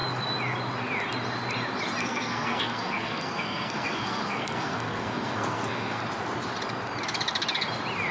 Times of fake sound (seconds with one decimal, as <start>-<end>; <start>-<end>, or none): 2.0-6.0